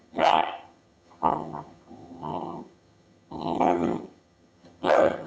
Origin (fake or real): fake